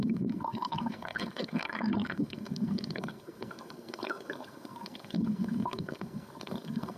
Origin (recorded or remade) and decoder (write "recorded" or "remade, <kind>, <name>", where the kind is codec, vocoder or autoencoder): remade, codec, SNAC